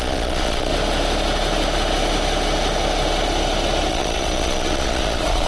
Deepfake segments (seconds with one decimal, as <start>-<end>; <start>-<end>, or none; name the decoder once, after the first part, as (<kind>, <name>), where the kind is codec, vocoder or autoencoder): 0.0-0.7 (vocoder, Vocos); 3.9-5.5